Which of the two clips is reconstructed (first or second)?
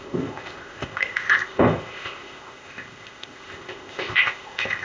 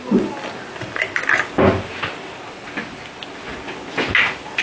first